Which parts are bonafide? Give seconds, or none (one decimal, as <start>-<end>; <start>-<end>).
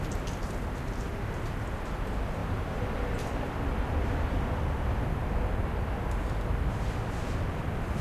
0.0-2.4; 5.3-8.0